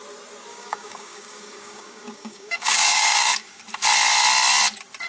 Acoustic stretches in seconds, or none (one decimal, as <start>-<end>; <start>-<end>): 0.0-0.5; 3.6-5.1